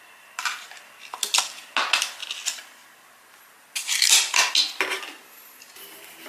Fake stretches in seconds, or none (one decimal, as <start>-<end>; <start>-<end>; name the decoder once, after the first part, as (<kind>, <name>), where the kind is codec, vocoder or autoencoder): none